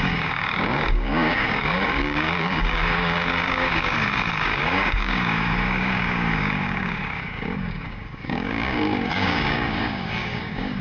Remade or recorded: remade